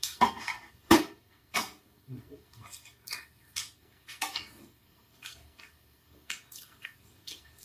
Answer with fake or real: fake